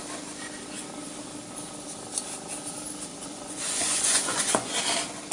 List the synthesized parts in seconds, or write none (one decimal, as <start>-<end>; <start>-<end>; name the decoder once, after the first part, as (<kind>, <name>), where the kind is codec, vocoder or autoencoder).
3.1-4.7 (vocoder, Vocos)

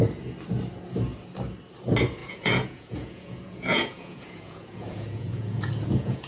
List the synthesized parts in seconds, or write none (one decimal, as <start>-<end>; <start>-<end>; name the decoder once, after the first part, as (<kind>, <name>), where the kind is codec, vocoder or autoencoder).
2.2-6.3 (vocoder, Vocos)

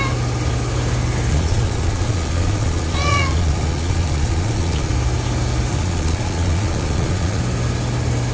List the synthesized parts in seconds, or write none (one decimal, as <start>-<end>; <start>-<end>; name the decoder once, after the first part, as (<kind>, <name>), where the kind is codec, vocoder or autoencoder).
1.3-4.9 (vocoder, Vocos); 5.7-7.4